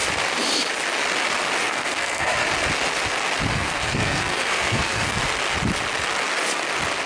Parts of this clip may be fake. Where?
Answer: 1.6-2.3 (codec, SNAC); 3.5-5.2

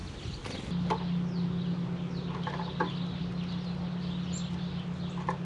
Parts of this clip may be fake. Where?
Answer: none

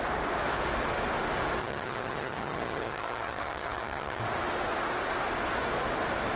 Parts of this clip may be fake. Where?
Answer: 1.6-4.2 (vocoder, HiFi-GAN)

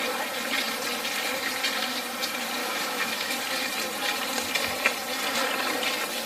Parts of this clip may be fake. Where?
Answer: 2.6-3.4 (autoencoder, DAC-VAE)